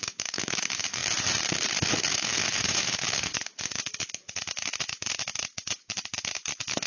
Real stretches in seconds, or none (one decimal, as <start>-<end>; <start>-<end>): 1.0-2.1